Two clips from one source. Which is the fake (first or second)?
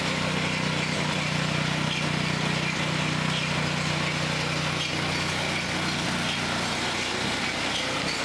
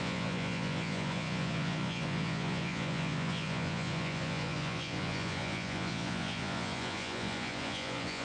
second